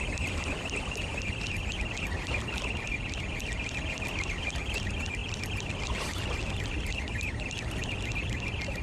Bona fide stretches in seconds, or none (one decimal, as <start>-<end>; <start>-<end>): 0.0-8.8